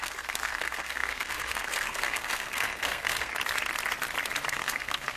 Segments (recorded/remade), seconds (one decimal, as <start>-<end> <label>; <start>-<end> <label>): 0.0-3.3 remade; 3.3-4.5 recorded; 4.5-5.2 remade